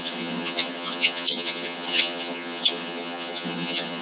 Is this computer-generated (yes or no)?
yes